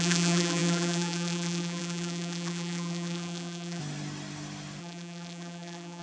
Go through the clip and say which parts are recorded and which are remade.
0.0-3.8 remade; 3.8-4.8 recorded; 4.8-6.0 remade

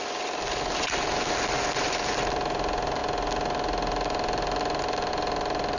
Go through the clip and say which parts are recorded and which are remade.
0.0-5.8 recorded